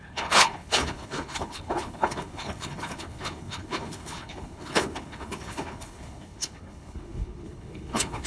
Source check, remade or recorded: remade